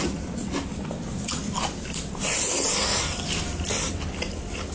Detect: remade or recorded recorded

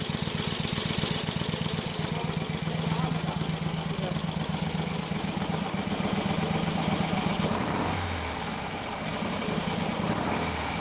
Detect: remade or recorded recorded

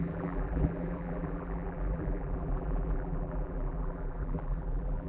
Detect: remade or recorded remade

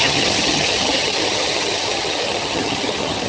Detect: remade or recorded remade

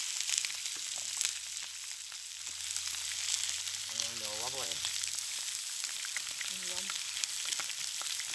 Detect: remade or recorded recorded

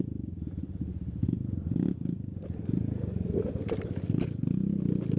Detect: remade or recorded recorded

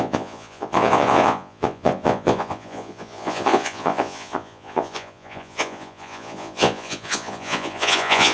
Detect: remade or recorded remade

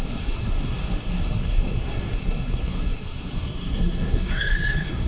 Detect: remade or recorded remade